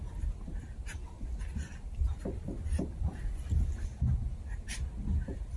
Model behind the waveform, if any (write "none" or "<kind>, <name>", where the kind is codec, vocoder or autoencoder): none